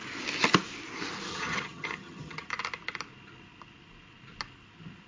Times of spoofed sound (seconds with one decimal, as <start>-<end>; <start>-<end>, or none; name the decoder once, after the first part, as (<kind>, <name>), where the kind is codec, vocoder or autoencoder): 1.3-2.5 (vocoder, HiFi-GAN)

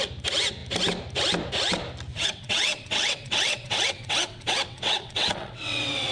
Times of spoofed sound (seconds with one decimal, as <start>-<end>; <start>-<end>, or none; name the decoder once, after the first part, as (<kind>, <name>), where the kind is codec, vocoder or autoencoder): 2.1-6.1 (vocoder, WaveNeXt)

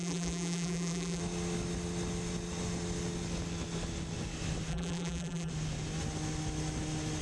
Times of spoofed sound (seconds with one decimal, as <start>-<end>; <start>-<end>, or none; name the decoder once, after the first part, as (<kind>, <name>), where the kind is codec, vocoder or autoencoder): 0.0-1.2 (vocoder, BigVGAN v2); 4.7-5.5

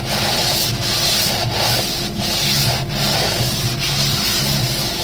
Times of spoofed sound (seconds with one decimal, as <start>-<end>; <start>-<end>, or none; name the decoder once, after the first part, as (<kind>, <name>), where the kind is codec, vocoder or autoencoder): 1.4-2.3 (vocoder, BigVGAN v2)

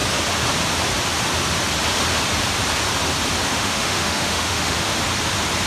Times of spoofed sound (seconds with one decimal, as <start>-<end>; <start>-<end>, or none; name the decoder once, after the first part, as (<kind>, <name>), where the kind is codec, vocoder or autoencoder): 3.5-5.0 (autoencoder, DAC-VAE)

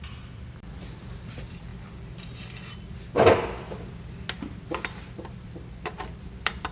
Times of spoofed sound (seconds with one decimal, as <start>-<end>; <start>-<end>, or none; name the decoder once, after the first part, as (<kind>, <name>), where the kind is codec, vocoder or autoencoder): 0.0-1.7 (vocoder, BigVGAN v2); 4.5-6.7